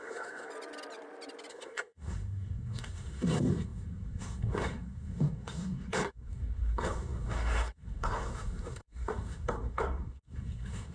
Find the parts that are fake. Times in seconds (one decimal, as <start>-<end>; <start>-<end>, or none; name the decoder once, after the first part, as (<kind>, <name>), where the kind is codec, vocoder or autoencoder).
0.0-0.5 (codec, SNAC); 1.5-10.9